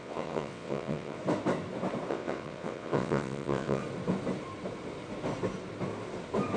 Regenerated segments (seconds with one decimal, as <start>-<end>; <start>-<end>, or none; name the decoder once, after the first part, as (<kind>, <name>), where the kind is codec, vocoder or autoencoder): 0.0-1.2 (vocoder, WaveNeXt); 2.1-3.8